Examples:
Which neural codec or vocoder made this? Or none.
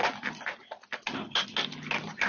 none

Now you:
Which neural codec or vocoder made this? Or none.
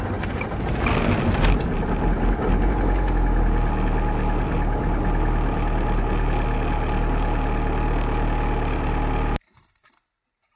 none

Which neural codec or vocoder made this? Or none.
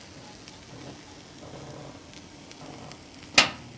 none